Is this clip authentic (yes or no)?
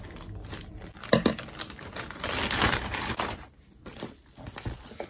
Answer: yes